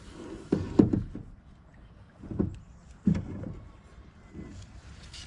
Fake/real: real